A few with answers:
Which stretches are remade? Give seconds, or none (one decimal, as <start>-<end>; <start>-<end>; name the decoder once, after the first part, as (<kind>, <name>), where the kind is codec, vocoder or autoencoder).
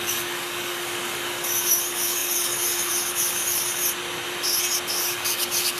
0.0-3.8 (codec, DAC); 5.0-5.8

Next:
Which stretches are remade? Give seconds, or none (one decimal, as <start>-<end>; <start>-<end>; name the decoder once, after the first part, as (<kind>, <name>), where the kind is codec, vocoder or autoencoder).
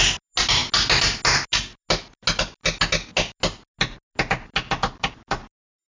none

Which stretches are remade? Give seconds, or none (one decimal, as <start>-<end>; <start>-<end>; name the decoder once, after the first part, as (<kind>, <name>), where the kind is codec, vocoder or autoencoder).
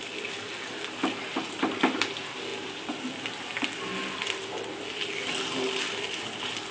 none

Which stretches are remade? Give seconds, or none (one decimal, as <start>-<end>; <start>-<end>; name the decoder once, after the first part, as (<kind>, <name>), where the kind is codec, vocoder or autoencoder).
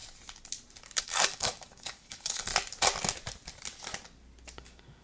1.0-2.5 (codec, DAC); 4.6-5.0